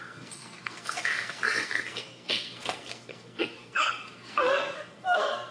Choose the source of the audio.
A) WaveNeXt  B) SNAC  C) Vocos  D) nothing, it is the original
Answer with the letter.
B